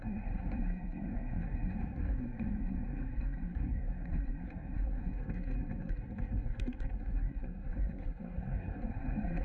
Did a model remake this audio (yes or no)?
yes